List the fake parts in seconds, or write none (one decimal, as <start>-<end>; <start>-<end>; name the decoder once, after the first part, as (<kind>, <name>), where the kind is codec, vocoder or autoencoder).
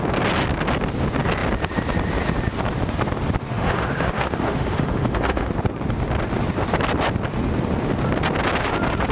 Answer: 3.5-5.5 (autoencoder, DAC-VAE)